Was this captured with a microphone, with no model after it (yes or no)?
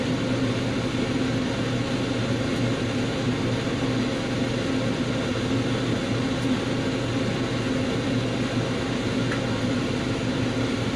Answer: yes